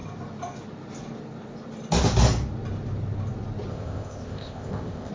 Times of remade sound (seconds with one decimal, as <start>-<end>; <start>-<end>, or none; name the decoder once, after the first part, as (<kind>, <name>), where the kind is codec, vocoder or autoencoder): 3.7-5.1 (codec, ZipCodec)